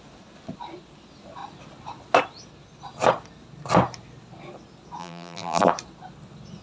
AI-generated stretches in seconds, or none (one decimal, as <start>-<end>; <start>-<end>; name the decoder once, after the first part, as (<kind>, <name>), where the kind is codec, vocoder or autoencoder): 5.0-5.7 (vocoder, BigVGAN v2)